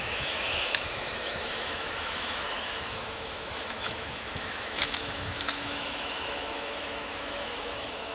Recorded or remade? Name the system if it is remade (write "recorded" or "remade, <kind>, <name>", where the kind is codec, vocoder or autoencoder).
remade, autoencoder, DAC-VAE